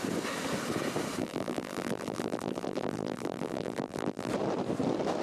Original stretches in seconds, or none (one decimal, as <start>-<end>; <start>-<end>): 0.0-1.2; 4.3-5.2